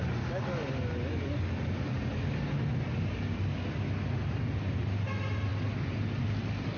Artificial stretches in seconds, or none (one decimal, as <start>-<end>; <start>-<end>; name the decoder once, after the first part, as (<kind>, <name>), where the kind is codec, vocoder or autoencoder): none